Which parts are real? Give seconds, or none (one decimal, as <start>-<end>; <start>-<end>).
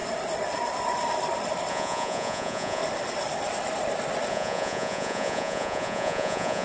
0.0-1.7; 2.8-4.3